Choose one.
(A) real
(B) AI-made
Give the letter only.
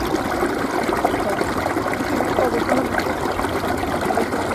A